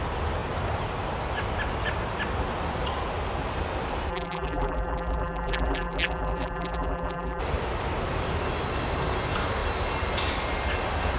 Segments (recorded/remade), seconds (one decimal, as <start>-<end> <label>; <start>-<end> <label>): 0.0-4.1 recorded; 4.1-7.4 remade; 7.4-11.2 recorded